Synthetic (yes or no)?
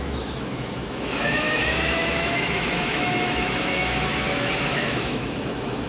yes